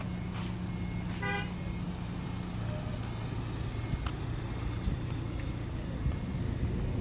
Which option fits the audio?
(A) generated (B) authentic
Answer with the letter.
B